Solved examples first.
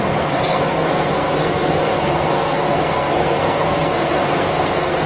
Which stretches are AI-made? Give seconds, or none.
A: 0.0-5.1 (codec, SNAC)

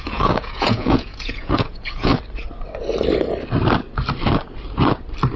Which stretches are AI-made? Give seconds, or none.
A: 0.0-2.1 (vocoder, Vocos)

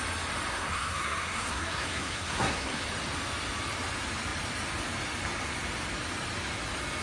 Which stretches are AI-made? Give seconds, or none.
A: 0.5-2.8 (codec, SNAC)

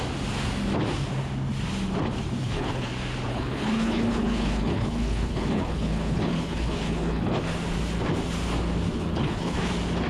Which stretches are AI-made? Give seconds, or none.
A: 2.4-2.9 (codec, HILCodec); 3.3-7.5; 9.0-9.7

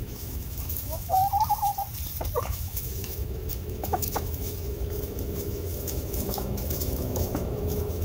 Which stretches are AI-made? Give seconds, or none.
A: 0.0-1.2 (autoencoder, DAC-VAE); 2.4-8.0

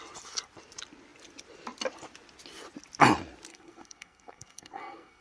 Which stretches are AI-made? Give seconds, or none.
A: 3.5-5.2 (codec, SNAC)

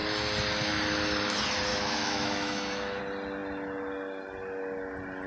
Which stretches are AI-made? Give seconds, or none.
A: 1.7-3.0 (autoencoder, DAC-VAE)